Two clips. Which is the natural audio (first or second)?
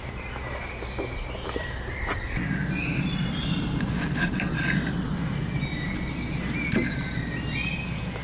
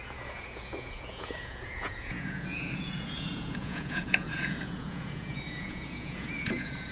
first